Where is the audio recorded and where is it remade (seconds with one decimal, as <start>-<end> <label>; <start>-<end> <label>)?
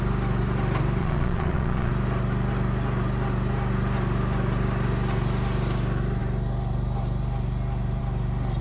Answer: 0.0-1.0 recorded; 1.0-1.9 remade; 1.9-8.6 recorded